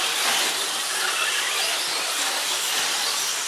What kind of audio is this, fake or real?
real